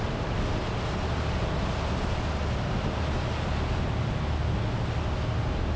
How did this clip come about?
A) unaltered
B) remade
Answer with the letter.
A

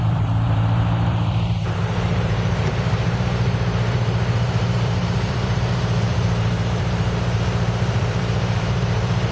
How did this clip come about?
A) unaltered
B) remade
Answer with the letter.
B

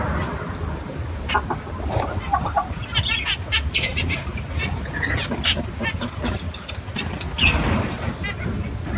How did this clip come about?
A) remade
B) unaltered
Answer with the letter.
B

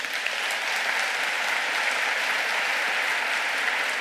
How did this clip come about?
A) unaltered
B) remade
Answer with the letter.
A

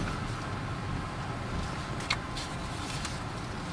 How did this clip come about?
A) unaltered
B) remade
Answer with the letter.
A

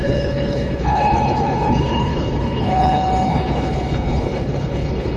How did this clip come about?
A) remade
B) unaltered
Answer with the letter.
A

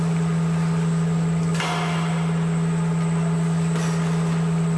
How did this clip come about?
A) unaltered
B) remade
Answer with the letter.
A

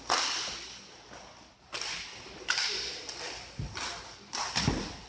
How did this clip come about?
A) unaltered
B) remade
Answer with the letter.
A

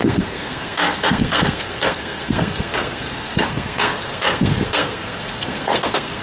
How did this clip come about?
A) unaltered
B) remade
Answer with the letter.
B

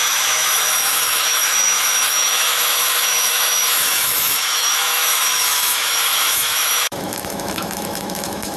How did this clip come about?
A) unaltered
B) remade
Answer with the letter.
B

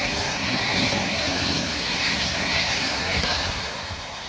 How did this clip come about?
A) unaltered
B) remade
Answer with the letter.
B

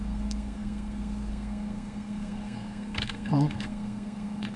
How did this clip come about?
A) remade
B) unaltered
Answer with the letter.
A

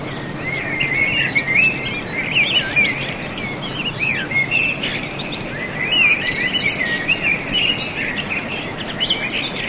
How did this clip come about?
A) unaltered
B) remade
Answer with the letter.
A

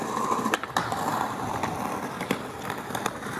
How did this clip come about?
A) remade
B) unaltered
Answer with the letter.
A